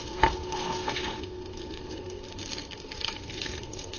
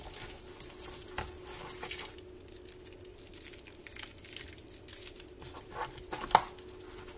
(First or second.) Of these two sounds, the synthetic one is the first